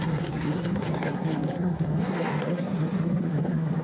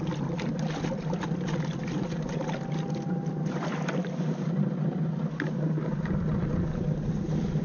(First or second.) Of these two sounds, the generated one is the first